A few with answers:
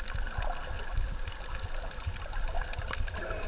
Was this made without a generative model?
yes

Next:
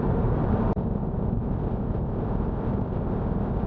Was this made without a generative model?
no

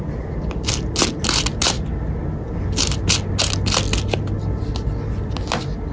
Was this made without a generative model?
yes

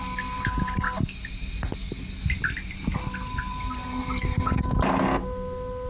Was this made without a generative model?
yes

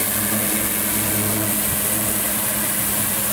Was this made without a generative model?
yes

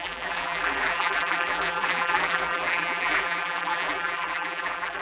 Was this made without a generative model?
no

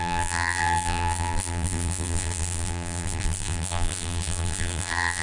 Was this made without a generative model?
no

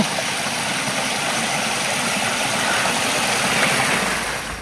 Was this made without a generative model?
yes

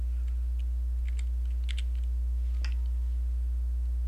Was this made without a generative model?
yes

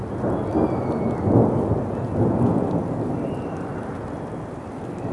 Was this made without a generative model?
yes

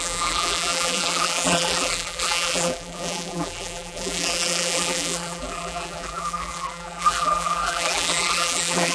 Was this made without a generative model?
no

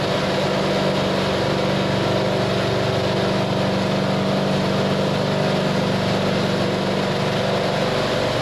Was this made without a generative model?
yes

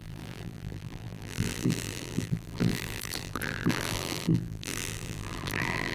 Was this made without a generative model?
no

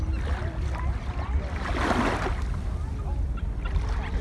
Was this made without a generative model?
yes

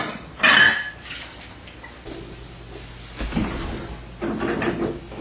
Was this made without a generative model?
no